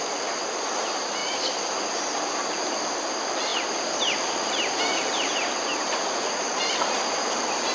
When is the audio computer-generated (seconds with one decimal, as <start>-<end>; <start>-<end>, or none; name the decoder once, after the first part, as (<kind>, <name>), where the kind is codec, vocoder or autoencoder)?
0.0-1.2 (vocoder, BigVGAN v2); 2.3-3.5; 4.4-5.7; 6.4-7.7